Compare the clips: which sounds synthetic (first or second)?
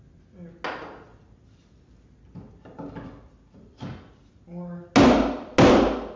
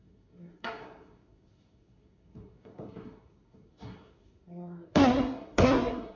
second